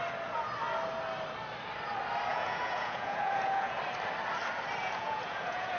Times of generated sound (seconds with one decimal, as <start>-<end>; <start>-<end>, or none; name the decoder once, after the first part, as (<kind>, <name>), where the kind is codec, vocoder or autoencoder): 2.3-3.8 (vocoder, Vocos); 4.8-5.8